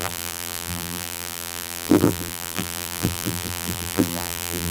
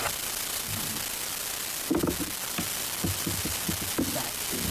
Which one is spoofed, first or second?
first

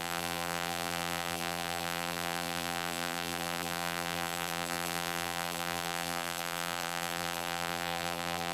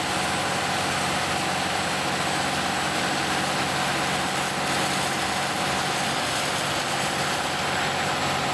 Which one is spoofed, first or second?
first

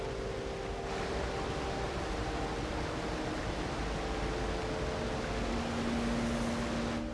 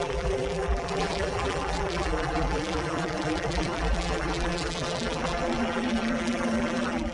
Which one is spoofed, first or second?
second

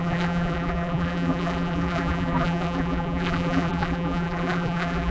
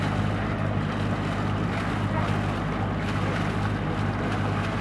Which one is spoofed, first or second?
first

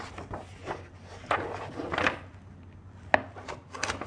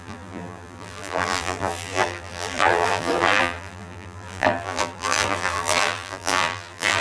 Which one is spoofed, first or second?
second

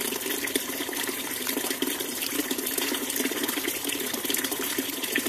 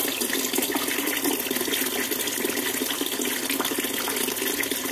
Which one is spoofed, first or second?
first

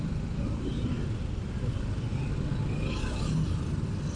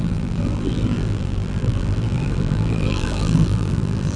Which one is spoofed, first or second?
second